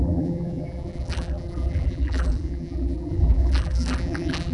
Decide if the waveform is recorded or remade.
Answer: remade